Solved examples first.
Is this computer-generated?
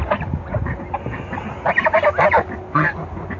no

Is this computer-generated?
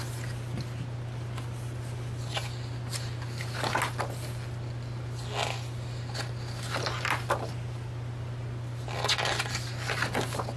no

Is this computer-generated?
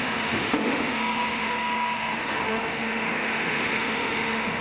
yes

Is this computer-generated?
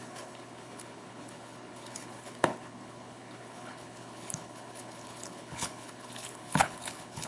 yes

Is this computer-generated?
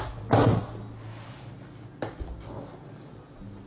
no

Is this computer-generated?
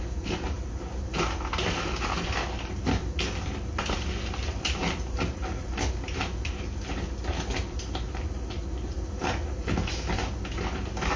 no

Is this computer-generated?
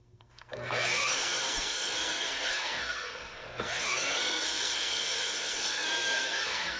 yes